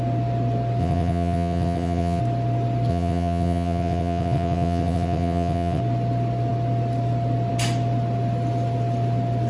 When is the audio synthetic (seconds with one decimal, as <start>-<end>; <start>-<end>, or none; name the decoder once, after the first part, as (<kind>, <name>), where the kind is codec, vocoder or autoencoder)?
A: 0.8-2.2 (vocoder, WaveNeXt); 2.9-5.8

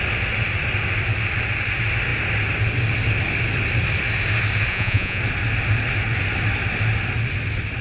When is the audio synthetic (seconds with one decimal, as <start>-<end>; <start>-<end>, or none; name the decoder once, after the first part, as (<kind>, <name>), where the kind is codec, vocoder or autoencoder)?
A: 4.7-5.2 (vocoder, Vocos)

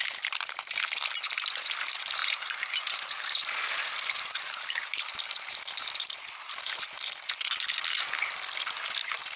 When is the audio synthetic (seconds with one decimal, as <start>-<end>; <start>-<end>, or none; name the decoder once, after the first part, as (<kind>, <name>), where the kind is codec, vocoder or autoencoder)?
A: 2.2-5.6 (vocoder, BigVGAN v2)

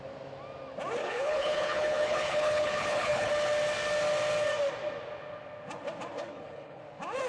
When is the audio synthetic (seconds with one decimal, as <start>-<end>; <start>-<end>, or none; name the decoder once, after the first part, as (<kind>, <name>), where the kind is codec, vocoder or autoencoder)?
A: 1.0-3.3 (codec, HILCodec); 6.3-6.8

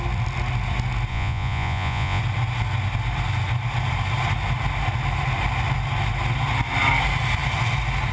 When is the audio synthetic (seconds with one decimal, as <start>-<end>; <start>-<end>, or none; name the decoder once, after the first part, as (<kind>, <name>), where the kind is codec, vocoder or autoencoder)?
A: 1.1-2.2 (vocoder, Vocos)

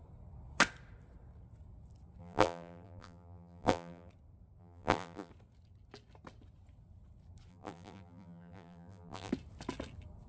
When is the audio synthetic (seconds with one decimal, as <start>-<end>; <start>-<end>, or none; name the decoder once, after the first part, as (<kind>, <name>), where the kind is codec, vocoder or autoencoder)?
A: 2.2-4.1 (vocoder, BigVGAN v2); 4.6-5.3; 7.5-9.3